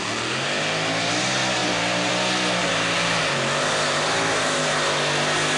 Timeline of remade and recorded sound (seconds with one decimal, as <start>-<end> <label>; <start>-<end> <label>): 0.0-1.6 recorded; 1.6-2.1 remade; 2.1-2.6 recorded; 2.6-3.2 remade; 3.2-5.6 recorded